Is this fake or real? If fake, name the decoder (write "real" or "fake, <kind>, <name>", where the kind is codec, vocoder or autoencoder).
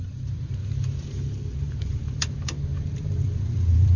fake, vocoder, BigVGAN v2